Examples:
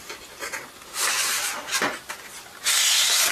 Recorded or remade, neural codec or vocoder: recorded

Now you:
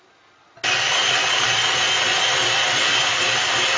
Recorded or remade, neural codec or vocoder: recorded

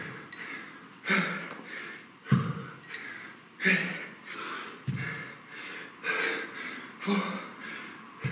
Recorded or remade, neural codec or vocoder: recorded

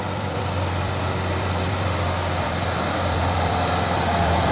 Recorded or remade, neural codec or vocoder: remade, vocoder, BigVGAN v2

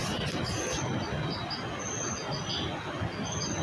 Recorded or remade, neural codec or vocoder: recorded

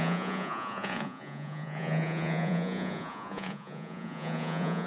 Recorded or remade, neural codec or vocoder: remade, vocoder, Vocos